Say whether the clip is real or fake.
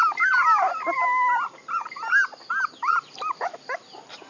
real